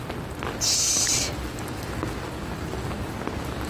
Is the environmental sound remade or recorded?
recorded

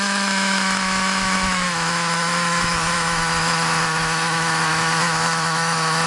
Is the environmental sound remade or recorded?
remade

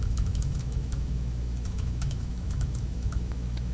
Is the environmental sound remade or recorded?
remade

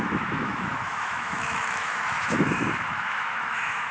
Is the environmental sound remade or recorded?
remade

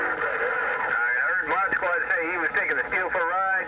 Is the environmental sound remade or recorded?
recorded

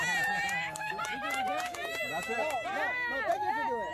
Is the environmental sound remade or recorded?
recorded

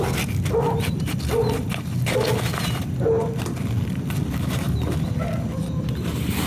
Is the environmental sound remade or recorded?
recorded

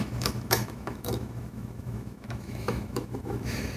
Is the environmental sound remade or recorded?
remade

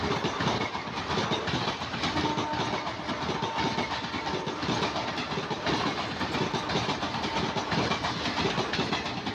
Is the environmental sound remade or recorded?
recorded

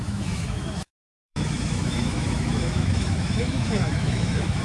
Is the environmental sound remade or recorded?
remade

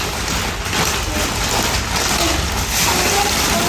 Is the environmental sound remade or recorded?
recorded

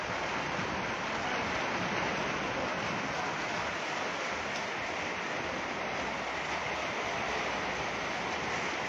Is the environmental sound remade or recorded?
recorded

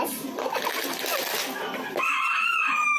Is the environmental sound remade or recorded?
recorded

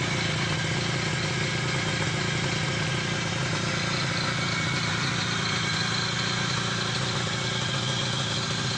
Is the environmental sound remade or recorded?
recorded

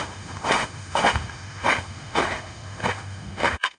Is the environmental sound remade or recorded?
remade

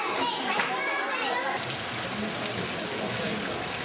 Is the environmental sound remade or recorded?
recorded